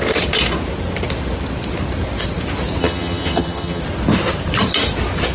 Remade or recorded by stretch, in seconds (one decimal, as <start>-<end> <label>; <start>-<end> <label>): 0.0-2.8 recorded; 2.8-3.8 remade; 3.8-5.3 recorded